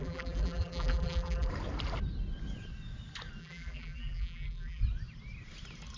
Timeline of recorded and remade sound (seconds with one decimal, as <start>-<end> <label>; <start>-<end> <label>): 0.0-1.5 remade; 1.5-3.4 recorded; 3.4-4.8 remade; 4.8-6.0 recorded